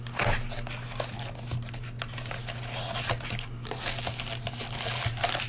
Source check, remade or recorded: recorded